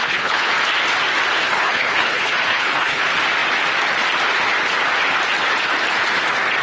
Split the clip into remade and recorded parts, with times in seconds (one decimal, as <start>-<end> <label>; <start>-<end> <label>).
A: 0.0-0.5 remade; 0.5-1.4 recorded; 1.4-3.0 remade; 3.0-6.6 recorded